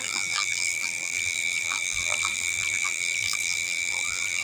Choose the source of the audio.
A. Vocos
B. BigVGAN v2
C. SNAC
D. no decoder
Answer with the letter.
B